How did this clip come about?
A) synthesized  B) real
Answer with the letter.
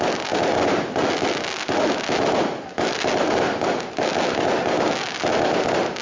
B